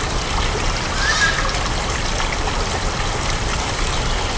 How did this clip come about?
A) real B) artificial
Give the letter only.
A